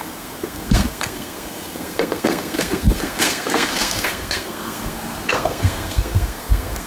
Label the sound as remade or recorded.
remade